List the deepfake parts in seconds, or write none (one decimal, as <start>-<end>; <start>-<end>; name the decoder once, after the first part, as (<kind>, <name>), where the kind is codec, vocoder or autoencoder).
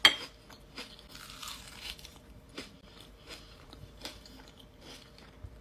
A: 1.4-4.8 (vocoder, BigVGAN v2)